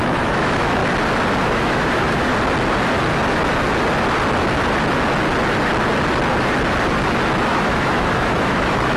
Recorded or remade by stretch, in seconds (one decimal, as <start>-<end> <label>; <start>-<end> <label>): 0.0-0.8 remade; 0.8-1.4 recorded; 1.4-2.3 remade; 2.3-7.5 recorded; 7.5-9.0 remade